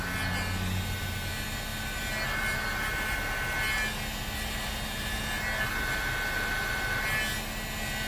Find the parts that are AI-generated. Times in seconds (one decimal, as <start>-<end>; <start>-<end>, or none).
none